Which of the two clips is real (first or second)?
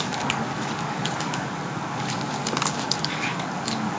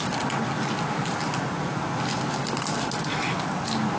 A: second